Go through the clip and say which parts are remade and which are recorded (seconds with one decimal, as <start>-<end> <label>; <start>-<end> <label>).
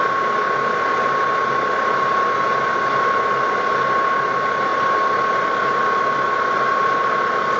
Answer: 0.0-7.6 recorded